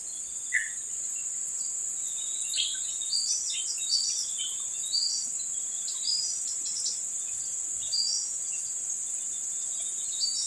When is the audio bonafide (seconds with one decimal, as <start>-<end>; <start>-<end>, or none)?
0.0-5.7; 6.9-10.5